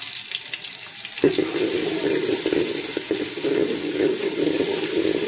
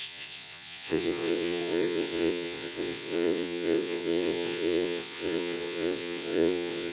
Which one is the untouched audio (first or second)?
first